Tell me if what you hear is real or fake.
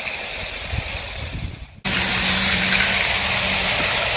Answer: real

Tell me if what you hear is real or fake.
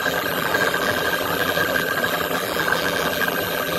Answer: fake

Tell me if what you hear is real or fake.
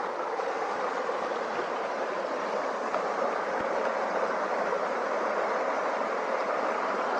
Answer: real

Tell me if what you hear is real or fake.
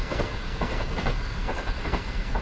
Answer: fake